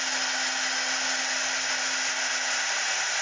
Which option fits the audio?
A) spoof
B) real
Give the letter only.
B